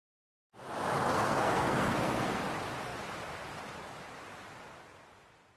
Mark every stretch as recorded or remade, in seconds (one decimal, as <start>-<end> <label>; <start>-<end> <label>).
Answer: 0.0-1.1 recorded; 1.1-2.4 remade; 2.4-5.6 recorded